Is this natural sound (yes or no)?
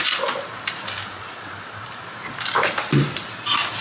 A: yes